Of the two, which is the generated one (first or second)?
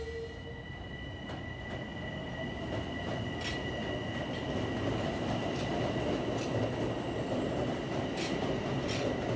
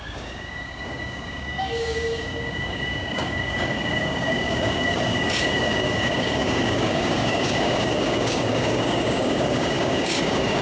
second